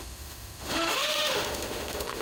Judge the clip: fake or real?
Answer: fake